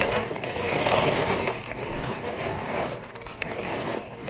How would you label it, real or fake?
fake